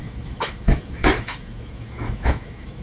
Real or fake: fake